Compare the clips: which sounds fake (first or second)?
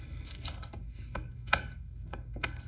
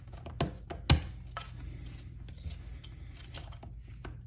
first